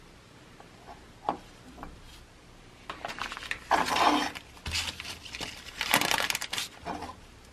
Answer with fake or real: real